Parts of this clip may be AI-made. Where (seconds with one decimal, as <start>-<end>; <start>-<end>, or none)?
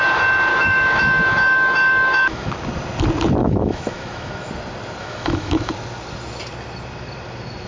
0.5-2.5; 3.4-4.5; 5.0-5.7